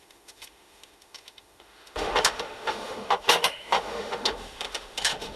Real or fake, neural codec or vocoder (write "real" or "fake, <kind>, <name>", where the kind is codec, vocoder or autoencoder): fake, autoencoder, DAC-VAE